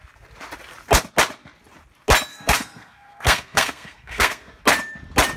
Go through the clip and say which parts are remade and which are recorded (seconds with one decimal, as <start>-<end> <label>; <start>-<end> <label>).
0.0-2.3 recorded; 2.3-4.6 remade; 4.6-5.4 recorded